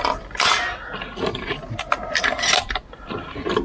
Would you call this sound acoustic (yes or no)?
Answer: yes